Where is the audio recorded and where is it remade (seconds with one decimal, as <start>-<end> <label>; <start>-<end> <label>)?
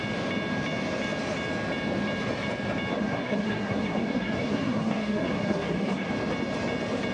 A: 0.0-2.9 recorded; 2.9-6.1 remade; 6.1-7.1 recorded